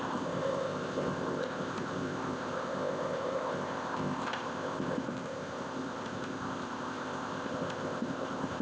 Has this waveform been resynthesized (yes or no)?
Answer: yes